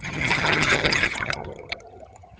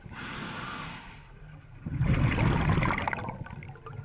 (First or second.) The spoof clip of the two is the first